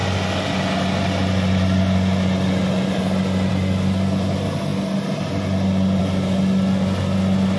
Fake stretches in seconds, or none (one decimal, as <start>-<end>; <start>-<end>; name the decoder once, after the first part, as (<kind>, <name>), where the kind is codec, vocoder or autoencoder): none